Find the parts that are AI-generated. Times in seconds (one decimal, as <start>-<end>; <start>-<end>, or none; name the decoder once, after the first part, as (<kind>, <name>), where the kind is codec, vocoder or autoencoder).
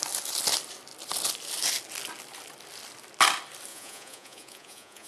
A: 3.7-5.1 (vocoder, Vocos)